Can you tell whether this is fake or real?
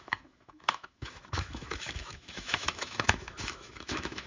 fake